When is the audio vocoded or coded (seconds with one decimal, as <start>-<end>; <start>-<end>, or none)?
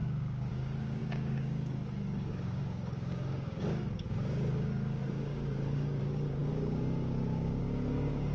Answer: 0.0-8.3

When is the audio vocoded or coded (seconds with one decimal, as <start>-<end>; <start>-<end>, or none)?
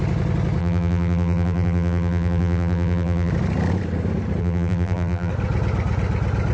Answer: 0.6-3.3; 4.4-5.3